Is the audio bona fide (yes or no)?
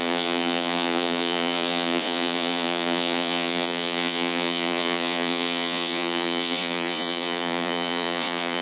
no